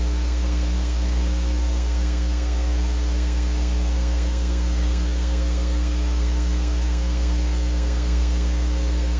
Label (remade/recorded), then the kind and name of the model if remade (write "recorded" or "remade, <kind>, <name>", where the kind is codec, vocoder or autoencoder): remade, codec, SNAC